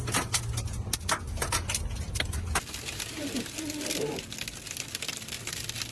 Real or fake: real